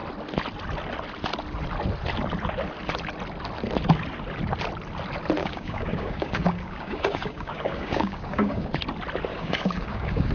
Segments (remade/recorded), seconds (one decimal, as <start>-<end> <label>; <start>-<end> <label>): 0.0-5.4 recorded; 5.4-8.7 remade; 8.7-9.3 recorded; 9.3-10.3 remade